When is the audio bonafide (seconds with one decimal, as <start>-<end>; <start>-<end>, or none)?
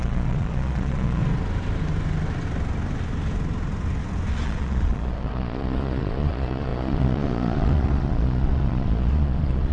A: 1.2-4.3